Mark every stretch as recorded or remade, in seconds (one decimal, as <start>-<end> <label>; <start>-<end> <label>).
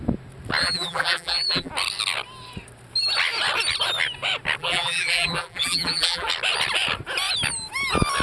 0.0-0.6 recorded; 0.6-1.7 remade; 1.7-4.6 recorded; 4.6-6.3 remade; 6.3-8.2 recorded